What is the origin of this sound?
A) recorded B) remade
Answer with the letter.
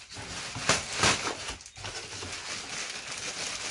A